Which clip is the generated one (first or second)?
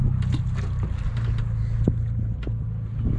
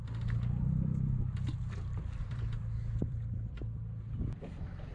second